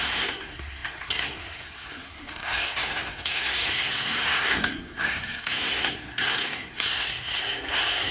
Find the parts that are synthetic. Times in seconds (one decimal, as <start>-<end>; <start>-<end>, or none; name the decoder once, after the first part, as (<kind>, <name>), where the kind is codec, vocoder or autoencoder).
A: 0.0-8.1 (codec, SNAC)